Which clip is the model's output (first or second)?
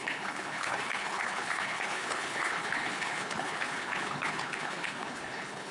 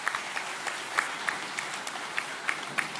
first